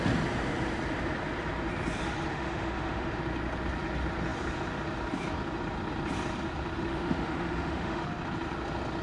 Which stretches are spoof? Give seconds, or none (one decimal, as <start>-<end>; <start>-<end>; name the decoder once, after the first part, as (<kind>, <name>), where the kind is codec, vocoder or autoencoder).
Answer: 2.3-3.2 (autoencoder, DAC-VAE); 6.9-8.0